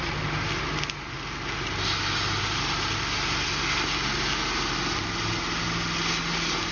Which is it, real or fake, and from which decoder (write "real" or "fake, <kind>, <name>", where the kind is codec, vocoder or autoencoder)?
real